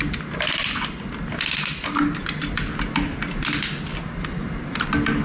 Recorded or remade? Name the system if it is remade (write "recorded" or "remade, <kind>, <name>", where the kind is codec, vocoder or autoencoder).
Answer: recorded